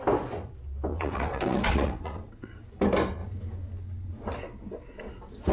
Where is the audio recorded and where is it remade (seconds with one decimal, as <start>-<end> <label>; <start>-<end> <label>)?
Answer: 0.0-0.9 recorded; 0.9-2.5 remade; 2.5-5.5 recorded